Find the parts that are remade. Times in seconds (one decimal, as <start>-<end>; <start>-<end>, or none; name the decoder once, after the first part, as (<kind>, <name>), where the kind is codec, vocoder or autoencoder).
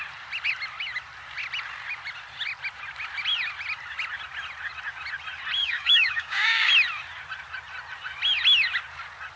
5.6-6.7 (codec, DAC)